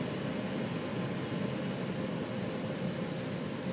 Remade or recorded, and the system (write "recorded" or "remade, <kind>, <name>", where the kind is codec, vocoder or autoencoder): recorded